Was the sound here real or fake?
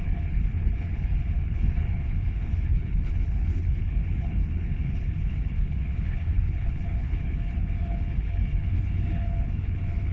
fake